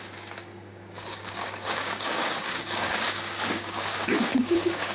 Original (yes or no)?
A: no